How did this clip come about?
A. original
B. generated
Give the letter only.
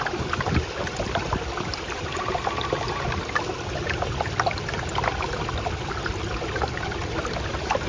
A